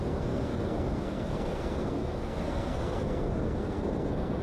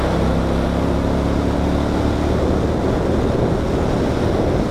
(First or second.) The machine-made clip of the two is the first